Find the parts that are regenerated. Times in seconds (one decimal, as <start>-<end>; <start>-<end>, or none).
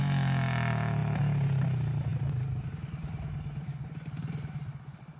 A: 2.1-5.2